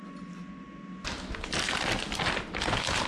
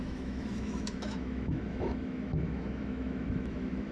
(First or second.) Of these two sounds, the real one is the first